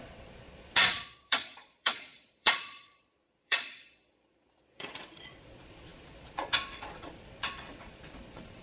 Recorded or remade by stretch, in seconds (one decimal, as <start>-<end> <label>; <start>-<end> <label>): 0.0-8.6 remade